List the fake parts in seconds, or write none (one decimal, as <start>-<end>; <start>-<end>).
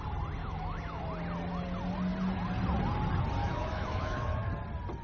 0.4-1.0; 3.4-4.5